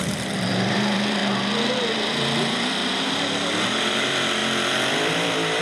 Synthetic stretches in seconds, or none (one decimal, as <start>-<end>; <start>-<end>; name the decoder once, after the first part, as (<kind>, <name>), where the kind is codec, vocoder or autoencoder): 0.0-1.2 (vocoder, BigVGAN v2); 1.8-2.8; 3.6-5.6